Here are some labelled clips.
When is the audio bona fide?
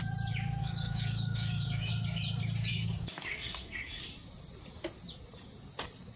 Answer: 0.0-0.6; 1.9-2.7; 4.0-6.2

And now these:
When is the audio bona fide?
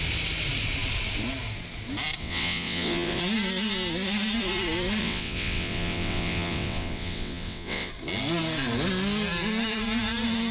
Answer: 0.0-2.2; 3.2-5.0; 7.9-10.5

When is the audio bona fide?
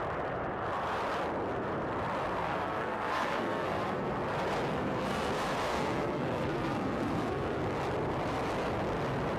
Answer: 0.0-2.4; 4.1-4.7; 5.3-5.7; 7.6-9.4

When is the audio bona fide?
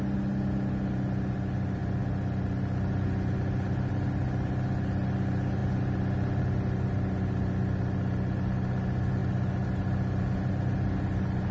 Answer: 0.0-11.5